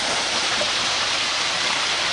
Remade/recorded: remade